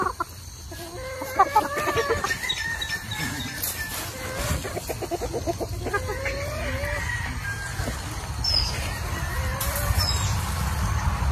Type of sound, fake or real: real